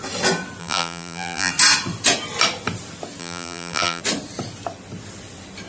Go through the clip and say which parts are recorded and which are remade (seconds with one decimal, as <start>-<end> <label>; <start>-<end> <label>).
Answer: 0.0-0.6 recorded; 0.6-1.5 remade; 1.5-3.2 recorded; 3.2-4.0 remade; 4.0-5.7 recorded